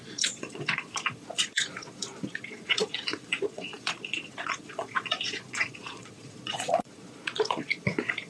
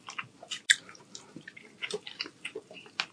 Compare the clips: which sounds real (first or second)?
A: second